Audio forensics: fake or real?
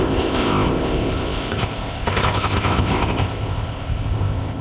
fake